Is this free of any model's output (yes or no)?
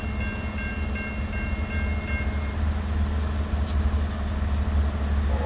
yes